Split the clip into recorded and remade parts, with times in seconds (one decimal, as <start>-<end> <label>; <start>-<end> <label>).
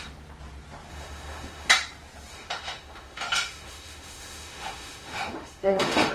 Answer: 0.0-0.9 recorded; 0.9-1.7 remade; 1.7-2.3 recorded; 2.3-6.1 remade